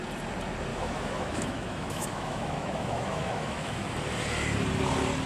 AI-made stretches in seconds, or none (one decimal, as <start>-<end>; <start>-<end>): 0.7-3.9